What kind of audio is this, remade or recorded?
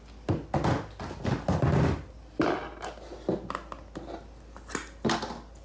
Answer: recorded